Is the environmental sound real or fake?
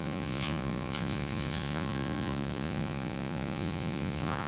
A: fake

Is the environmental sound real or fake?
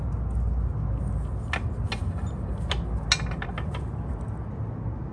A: real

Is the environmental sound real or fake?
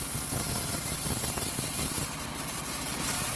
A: real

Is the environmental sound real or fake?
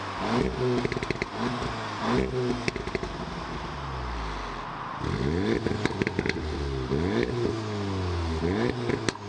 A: real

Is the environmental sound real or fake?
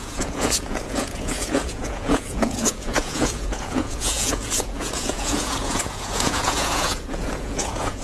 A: fake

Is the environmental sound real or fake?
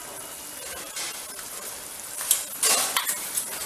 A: real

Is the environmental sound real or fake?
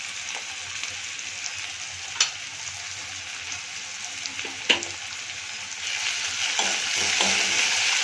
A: real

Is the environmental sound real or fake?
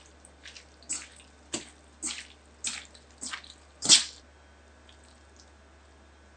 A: real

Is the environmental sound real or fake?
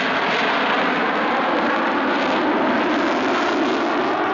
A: real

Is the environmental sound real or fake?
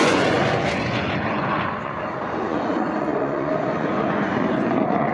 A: fake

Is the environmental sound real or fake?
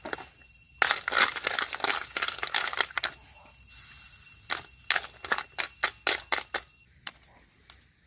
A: real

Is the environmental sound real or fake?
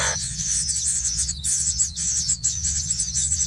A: fake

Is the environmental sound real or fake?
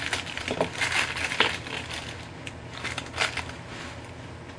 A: real